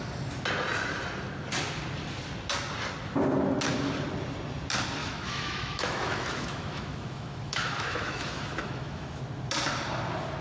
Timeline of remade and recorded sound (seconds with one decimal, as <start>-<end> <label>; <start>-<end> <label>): 0.0-5.0 recorded; 5.0-9.2 remade; 9.2-10.4 recorded